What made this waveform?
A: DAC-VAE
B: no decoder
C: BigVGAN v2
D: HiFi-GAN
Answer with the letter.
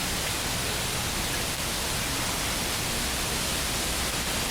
B